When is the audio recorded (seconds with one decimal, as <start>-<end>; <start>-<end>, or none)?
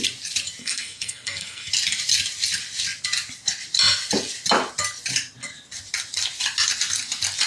0.0-0.6; 1.7-7.5